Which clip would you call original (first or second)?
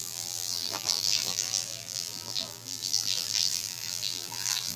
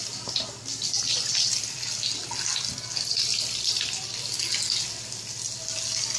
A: second